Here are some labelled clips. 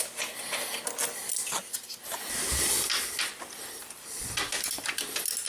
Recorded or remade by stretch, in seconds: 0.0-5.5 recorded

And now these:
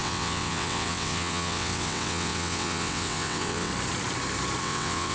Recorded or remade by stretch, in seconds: 0.0-3.7 remade; 3.7-4.6 recorded; 4.6-5.1 remade

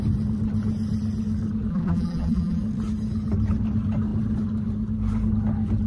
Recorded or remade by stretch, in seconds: 0.0-1.7 recorded; 1.7-2.6 remade; 2.6-5.9 recorded

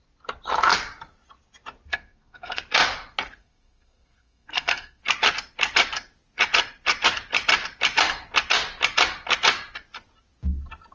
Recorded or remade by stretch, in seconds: 0.0-1.9 recorded; 1.9-2.6 remade; 2.6-3.4 recorded; 3.4-5.0 remade; 5.0-10.9 recorded